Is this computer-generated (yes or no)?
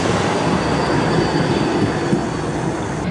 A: no